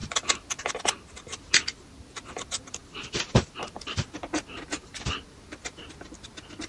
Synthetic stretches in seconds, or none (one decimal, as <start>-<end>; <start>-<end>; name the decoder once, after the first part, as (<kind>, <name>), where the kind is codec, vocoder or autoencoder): none